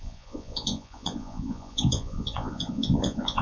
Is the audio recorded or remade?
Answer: remade